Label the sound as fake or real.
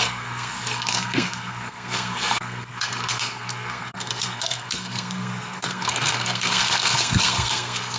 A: fake